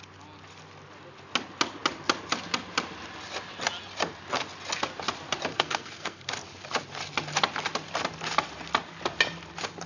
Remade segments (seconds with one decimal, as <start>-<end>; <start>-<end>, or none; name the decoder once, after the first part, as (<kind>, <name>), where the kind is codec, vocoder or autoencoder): 5.5-6.3 (codec, SNAC)